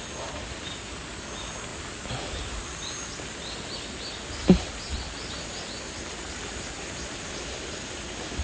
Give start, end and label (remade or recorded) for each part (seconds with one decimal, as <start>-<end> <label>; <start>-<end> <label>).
0.0-8.4 recorded